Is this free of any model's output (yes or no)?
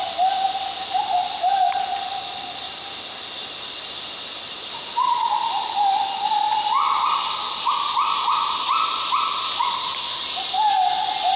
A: yes